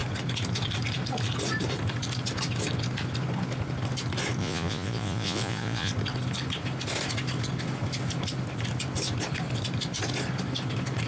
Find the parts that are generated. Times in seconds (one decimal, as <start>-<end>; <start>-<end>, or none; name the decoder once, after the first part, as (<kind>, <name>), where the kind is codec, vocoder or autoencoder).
4.4-5.9 (vocoder, Vocos)